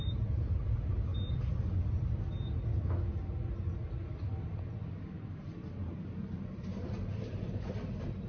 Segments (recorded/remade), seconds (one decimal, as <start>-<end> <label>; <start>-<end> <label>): 0.0-1.1 remade; 1.1-5.1 recorded; 5.1-8.3 remade